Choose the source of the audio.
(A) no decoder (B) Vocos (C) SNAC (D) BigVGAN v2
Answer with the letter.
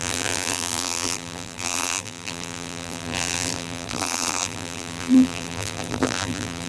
D